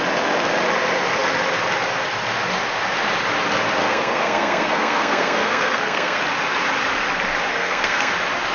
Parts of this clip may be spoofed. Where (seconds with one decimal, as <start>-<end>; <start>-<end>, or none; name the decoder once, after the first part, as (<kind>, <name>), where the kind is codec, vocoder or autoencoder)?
3.8-6.2 (codec, SNAC); 7.5-8.1